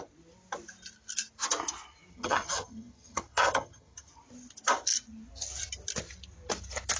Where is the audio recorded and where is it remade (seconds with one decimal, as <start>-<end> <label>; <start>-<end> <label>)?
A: 0.0-2.1 recorded; 2.1-4.1 remade; 4.1-7.0 recorded